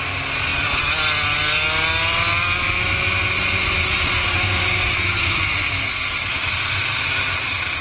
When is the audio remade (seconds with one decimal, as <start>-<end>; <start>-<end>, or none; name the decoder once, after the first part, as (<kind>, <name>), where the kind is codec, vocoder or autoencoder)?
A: 4.2-5.4 (autoencoder, DAC-VAE)